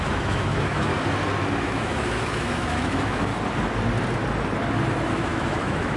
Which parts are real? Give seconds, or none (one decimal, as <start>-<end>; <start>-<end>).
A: 0.9-1.6; 3.3-5.1